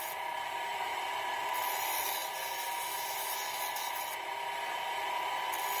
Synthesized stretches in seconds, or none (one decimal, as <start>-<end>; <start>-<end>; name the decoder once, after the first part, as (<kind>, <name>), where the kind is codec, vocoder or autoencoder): 0.9-1.5 (vocoder, BigVGAN v2)